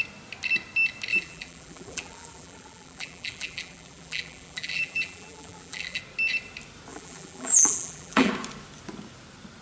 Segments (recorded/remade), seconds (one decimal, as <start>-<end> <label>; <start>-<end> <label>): 0.0-1.1 recorded; 1.1-6.0 remade; 6.0-6.9 recorded; 6.9-8.3 remade; 8.3-9.6 recorded